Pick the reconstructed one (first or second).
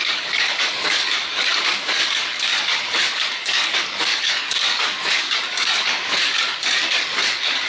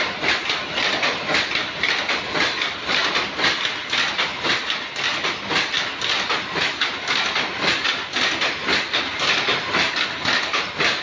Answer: first